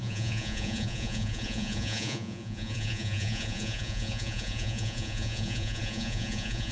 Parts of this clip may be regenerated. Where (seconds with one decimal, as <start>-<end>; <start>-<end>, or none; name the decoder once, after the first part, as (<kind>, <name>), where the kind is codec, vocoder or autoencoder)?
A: 0.0-6.7 (vocoder, Vocos)